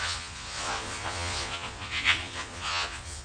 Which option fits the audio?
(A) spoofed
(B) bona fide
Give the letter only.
A